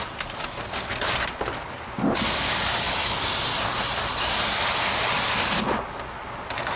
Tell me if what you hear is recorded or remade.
recorded